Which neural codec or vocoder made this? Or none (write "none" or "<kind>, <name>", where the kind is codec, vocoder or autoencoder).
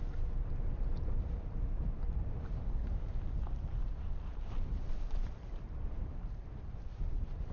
vocoder, BigVGAN v2